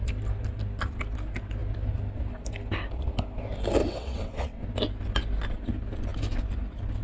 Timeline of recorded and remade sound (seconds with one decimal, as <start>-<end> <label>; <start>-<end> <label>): 0.0-3.8 recorded; 3.8-4.6 remade; 4.6-7.0 recorded